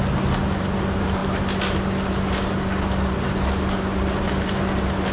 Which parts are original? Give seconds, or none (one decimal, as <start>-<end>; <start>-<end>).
0.0-5.1